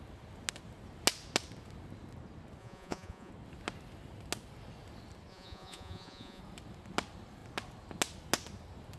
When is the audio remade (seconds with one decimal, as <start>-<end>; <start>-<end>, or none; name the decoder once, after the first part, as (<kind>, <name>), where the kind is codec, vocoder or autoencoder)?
2.6-3.3 (vocoder, Vocos); 5.3-6.4